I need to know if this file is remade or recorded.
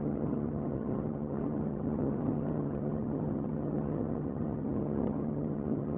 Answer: remade